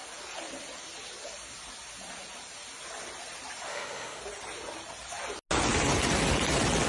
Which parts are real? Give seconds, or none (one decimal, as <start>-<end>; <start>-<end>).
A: 0.0-3.7; 4.2-6.9